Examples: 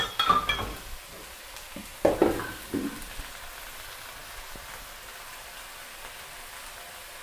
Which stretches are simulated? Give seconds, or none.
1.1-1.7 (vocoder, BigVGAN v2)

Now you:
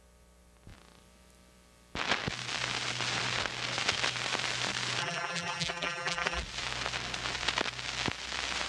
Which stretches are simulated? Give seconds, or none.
5.0-6.4 (vocoder, BigVGAN v2)